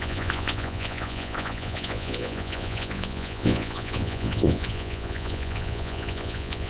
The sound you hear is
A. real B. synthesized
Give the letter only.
B